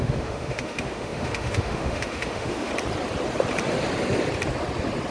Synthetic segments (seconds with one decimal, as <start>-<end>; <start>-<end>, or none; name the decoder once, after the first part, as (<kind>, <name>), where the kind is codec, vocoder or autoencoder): 0.0-2.7 (autoencoder, DAC-VAE)